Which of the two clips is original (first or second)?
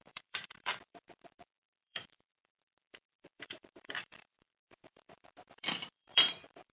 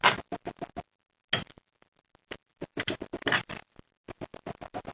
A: second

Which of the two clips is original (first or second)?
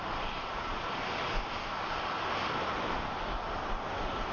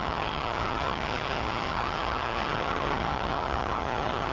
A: first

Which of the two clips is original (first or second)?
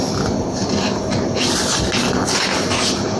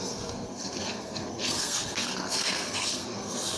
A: first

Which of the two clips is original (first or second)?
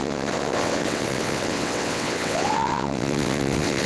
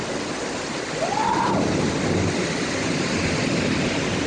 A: second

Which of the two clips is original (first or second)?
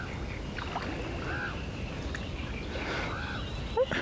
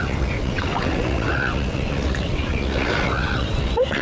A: first